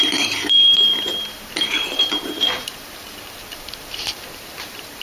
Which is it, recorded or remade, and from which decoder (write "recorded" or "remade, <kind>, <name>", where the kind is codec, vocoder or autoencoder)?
remade, vocoder, BigVGAN v2